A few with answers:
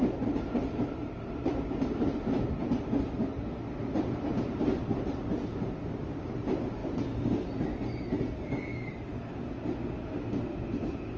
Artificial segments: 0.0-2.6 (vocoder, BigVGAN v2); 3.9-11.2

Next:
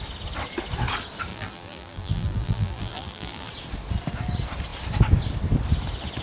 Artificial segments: 1.3-3.5 (vocoder, BigVGAN v2)

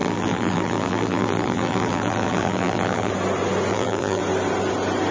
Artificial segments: 0.0-3.1 (vocoder, BigVGAN v2); 3.7-4.2

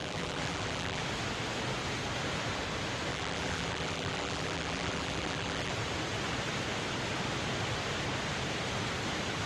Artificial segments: 0.0-1.0 (vocoder, BigVGAN v2); 3.1-5.7

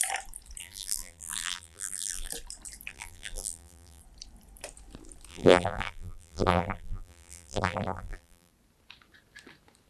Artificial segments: 0.6-2.3 (vocoder, BigVGAN v2); 2.9-4.0; 5.3-8.5